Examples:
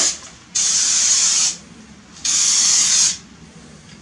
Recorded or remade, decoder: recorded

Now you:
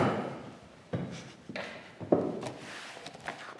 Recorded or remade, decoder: recorded